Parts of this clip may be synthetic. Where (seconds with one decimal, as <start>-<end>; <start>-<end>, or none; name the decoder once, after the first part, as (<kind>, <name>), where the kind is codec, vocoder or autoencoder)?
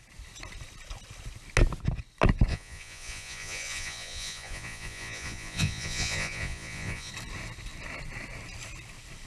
2.5-7.1 (vocoder, Vocos)